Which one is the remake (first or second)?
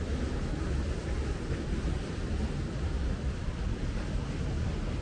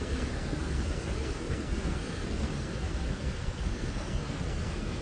second